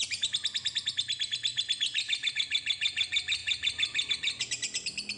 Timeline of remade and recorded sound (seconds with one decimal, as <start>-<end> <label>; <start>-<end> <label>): 0.0-5.2 recorded